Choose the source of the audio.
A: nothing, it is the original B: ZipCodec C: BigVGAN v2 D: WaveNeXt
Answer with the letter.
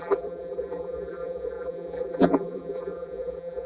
C